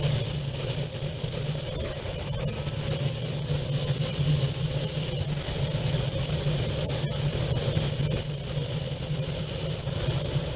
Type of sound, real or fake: real